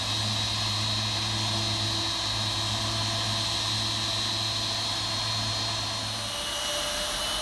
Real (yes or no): yes